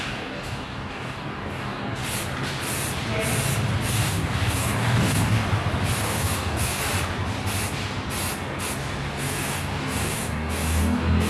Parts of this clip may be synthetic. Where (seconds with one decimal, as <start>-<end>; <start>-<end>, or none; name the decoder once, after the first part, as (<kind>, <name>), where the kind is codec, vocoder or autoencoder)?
0.0-2.0 (codec, DAC); 3.9-5.4; 6.0-6.8; 9.1-11.3